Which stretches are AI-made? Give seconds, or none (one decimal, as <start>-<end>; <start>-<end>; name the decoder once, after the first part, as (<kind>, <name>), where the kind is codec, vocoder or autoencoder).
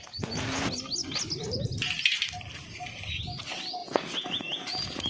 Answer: 3.8-5.1 (vocoder, Vocos)